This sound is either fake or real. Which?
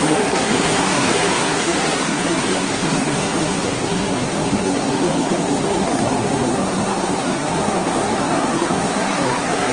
fake